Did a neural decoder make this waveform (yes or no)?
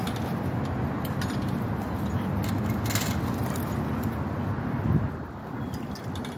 no